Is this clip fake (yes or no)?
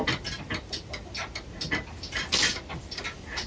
no